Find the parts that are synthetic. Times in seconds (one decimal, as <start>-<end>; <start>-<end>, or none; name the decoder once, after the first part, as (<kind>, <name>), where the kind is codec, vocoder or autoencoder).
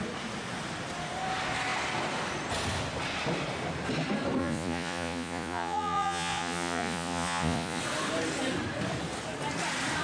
4.4-7.8 (vocoder, Vocos)